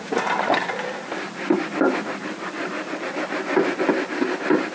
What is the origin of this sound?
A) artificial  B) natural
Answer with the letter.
B